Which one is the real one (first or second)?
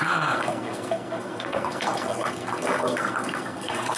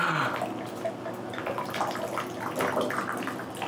second